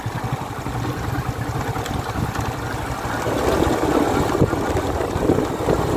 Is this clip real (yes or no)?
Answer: yes